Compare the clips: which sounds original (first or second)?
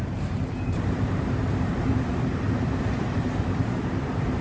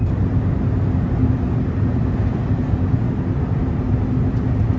second